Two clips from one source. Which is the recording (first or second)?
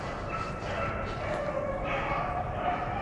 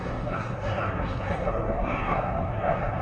first